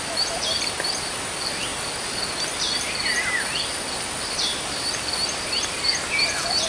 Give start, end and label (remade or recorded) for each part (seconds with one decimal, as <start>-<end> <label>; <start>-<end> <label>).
0.0-6.7 recorded